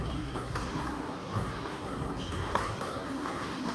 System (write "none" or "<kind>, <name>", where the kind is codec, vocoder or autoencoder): codec, SNAC